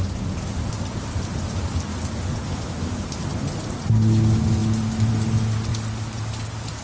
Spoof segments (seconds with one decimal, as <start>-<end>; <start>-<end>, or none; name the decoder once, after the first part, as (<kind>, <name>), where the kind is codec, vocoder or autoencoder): none